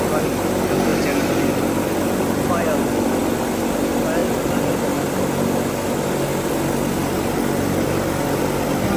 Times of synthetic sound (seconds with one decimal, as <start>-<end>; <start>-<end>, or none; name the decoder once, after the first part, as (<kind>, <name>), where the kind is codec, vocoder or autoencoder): none